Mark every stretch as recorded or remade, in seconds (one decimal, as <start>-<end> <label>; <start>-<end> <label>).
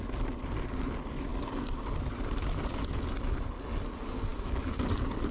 0.0-5.3 recorded